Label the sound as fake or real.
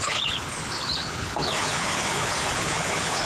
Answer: fake